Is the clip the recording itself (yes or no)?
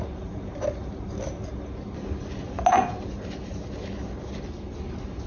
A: yes